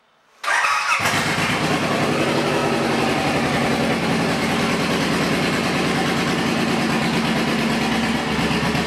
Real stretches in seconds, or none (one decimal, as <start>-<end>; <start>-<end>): 0.0-8.9